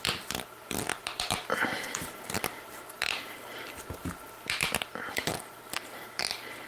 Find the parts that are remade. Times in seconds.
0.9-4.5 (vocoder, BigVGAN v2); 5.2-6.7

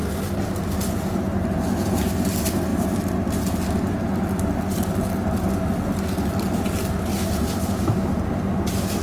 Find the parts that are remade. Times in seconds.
none

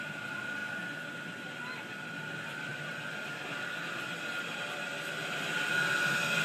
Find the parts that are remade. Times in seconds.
none

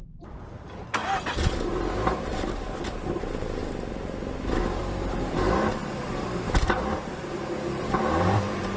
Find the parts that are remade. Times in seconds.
0.0-1.0 (vocoder, BigVGAN v2); 1.9-3.6; 4.8-8.8

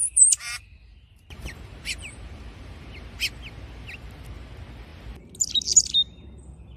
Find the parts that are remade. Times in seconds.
0.0-2.8 (vocoder, BigVGAN v2)

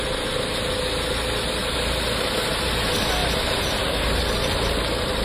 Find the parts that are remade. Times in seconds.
1.6-2.7 (vocoder, BigVGAN v2); 3.2-4.2

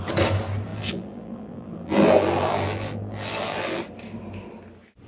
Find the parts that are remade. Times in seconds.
0.7-3.8 (vocoder, BigVGAN v2)

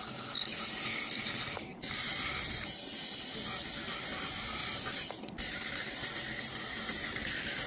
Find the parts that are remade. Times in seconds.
1.7-3.0 (vocoder, BigVGAN v2); 4.6-5.9